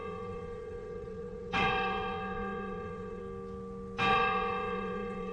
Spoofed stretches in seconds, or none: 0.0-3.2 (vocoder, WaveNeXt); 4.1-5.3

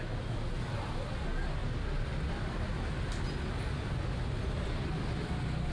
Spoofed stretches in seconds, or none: none

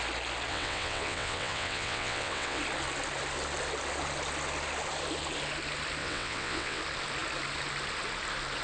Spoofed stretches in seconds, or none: 0.5-2.6 (vocoder, WaveNeXt); 6.0-6.8

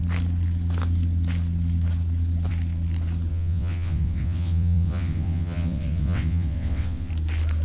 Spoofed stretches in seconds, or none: 3.3-7.1 (vocoder, WaveNeXt)

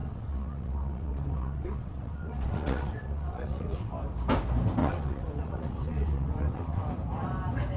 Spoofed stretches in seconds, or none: 0.0-3.9 (vocoder, WaveNeXt); 4.8-6.9